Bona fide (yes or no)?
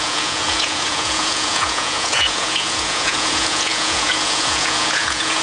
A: no